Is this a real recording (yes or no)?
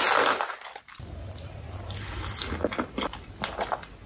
yes